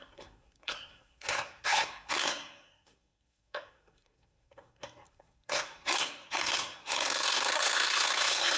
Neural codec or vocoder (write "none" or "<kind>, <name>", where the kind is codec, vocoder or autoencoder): codec, SNAC